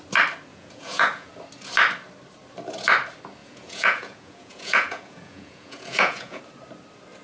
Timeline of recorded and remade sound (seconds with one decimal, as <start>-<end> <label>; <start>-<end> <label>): 0.0-0.5 recorded; 0.5-1.3 remade; 1.3-3.4 recorded; 3.4-6.4 remade; 6.4-7.2 recorded